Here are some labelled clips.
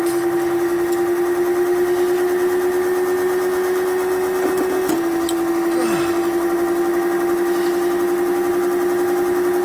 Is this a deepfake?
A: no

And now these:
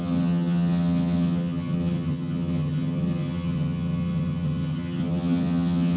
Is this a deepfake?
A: yes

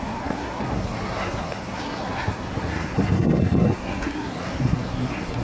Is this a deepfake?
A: yes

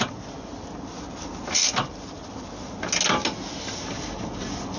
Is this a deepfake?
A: no